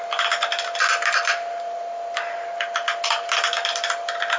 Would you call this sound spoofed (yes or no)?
no